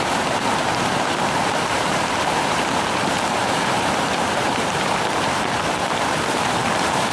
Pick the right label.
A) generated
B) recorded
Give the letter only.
A